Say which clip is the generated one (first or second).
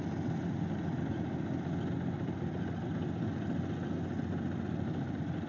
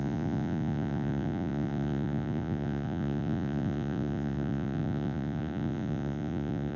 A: second